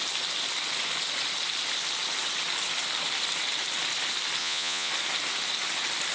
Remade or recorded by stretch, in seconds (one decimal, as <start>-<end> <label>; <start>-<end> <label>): 0.0-4.4 recorded; 4.4-4.9 remade; 4.9-6.1 recorded